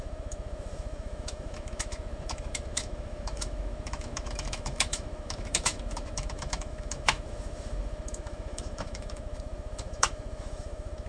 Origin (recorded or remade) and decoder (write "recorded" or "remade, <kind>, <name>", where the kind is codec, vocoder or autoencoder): remade, autoencoder, DAC-VAE